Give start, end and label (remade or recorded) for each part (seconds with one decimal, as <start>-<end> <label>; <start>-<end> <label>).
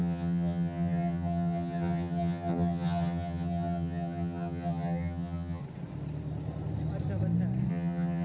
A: 0.0-5.6 remade; 5.6-7.7 recorded; 7.7-8.2 remade